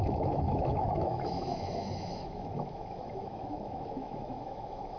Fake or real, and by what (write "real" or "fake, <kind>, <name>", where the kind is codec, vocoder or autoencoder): fake, autoencoder, DAC-VAE